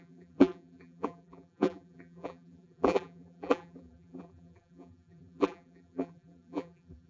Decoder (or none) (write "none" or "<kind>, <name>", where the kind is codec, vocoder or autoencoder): vocoder, BigVGAN v2